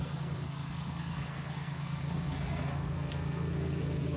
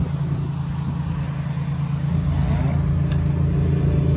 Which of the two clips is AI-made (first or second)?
first